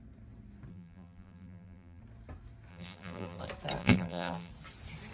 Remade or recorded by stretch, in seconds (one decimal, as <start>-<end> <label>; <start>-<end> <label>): 0.0-0.7 recorded; 0.7-2.0 remade; 2.0-2.7 recorded; 2.7-3.4 remade; 3.4-3.8 recorded; 3.8-4.5 remade; 4.5-5.1 recorded